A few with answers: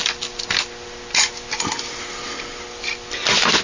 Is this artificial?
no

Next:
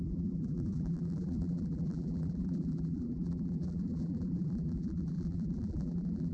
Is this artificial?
yes